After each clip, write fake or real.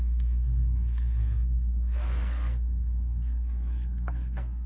fake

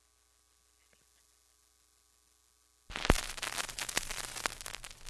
real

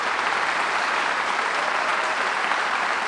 fake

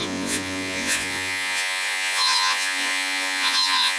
fake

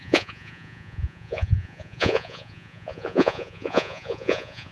fake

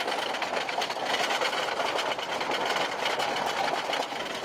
real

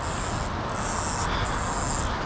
real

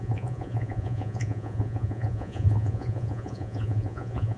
fake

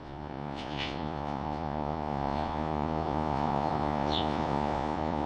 fake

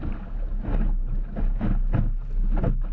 real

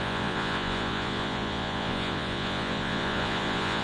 fake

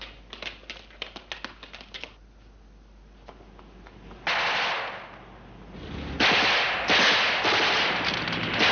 real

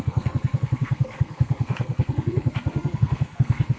fake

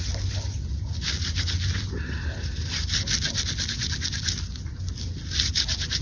real